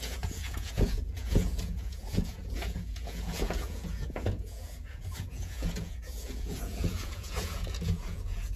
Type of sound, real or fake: fake